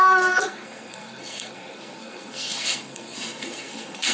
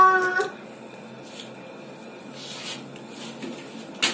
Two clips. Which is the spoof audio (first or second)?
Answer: first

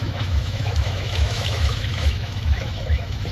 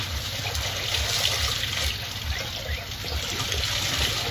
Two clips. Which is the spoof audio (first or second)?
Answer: first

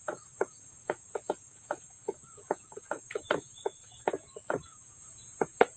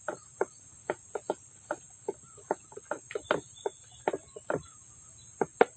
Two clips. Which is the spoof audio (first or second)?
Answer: first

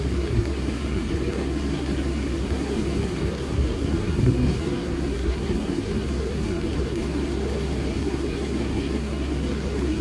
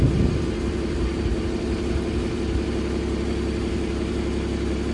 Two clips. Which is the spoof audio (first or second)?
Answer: first